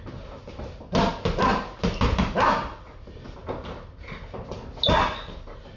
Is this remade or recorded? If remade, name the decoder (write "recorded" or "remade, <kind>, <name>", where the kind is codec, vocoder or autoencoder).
recorded